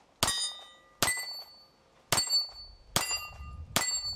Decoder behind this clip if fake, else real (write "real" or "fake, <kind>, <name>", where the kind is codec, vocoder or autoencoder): real